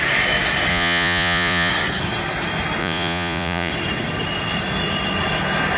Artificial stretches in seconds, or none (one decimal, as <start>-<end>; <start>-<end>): 0.7-1.7; 2.8-3.7